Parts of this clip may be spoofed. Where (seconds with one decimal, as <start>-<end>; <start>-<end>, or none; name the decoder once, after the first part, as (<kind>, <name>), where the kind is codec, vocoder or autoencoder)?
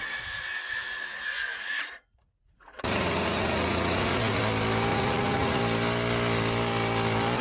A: 0.0-4.4 (vocoder, Vocos); 4.9-5.6